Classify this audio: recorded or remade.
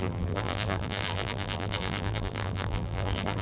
remade